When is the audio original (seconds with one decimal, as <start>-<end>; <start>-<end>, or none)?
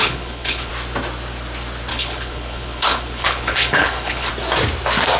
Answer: 0.7-1.9; 4.3-5.2